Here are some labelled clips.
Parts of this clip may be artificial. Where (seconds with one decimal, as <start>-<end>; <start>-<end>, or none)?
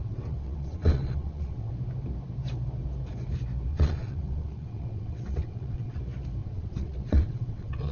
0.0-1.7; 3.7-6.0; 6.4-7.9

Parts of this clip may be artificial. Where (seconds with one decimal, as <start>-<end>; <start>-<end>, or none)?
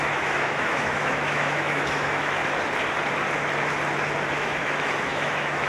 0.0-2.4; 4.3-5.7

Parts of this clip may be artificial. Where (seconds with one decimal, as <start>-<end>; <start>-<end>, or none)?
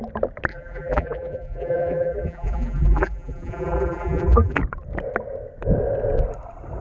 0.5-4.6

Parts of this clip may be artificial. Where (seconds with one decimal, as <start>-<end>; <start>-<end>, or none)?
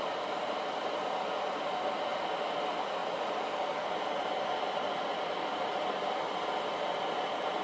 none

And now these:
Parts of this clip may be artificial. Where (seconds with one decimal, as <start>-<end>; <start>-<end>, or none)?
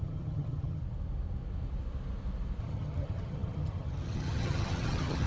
0.0-0.8; 2.6-5.3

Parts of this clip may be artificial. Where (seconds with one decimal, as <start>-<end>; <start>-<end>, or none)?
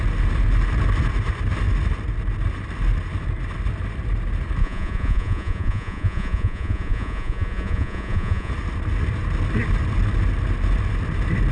4.6-8.5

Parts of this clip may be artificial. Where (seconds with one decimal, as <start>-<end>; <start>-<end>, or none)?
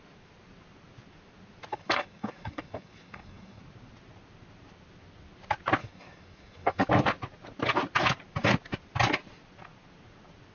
1.7-3.6; 5.8-6.9